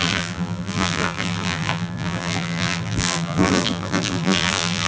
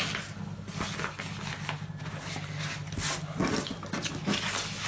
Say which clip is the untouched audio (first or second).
second